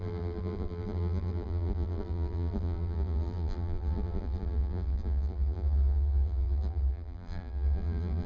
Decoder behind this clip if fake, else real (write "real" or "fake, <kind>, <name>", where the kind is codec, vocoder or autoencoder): fake, vocoder, BigVGAN v2